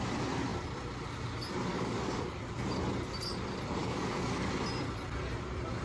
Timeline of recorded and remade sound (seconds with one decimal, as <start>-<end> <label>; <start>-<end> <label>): 0.0-1.7 recorded; 1.7-2.4 remade; 2.4-3.8 recorded; 3.8-4.5 remade; 4.5-5.8 recorded

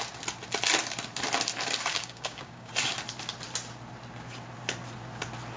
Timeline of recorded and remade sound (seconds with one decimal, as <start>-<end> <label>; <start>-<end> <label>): 0.0-1.9 recorded; 1.9-2.7 remade; 2.7-5.6 recorded

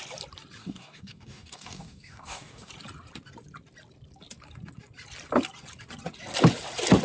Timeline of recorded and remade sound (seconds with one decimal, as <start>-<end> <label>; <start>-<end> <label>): 0.0-0.6 recorded; 0.6-2.7 remade; 2.7-7.0 recorded

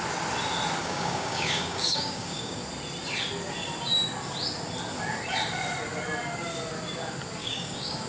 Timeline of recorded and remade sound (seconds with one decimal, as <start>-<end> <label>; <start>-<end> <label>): 0.0-0.8 recorded; 0.8-2.6 remade; 2.6-7.4 recorded; 7.4-8.1 remade